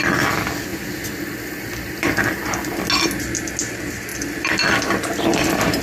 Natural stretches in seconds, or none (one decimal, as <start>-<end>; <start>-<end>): 0.0-0.7; 2.8-4.1